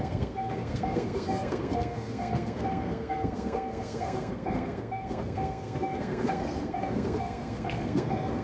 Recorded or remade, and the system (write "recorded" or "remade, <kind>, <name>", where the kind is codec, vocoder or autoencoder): remade, codec, SNAC